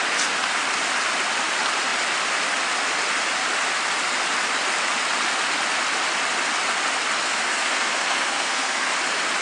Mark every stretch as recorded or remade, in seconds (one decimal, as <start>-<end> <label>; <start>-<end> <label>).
0.0-7.5 recorded; 7.5-8.9 remade; 8.9-9.4 recorded